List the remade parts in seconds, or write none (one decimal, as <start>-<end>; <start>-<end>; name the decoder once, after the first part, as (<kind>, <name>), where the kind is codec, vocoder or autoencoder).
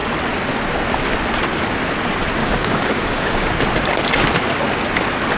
2.4-3.5 (codec, DAC)